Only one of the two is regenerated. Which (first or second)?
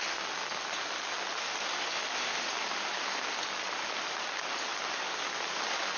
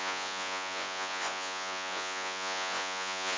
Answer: second